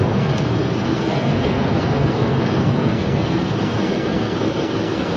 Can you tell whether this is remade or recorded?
remade